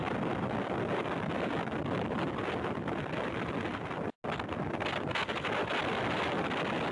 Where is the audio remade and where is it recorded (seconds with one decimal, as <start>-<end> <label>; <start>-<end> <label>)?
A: 0.0-6.9 recorded